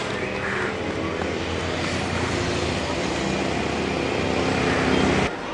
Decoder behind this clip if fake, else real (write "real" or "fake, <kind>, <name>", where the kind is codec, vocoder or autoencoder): real